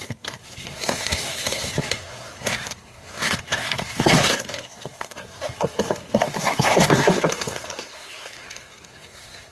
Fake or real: fake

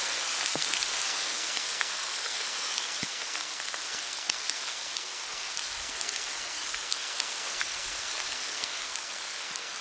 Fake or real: fake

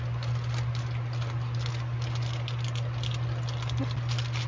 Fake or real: real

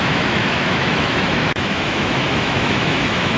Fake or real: fake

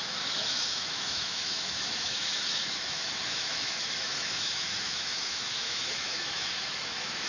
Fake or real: fake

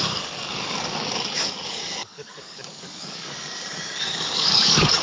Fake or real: fake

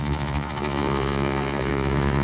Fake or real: fake